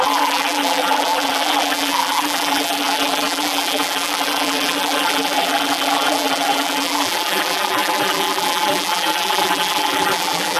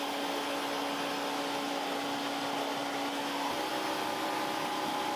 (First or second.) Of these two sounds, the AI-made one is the first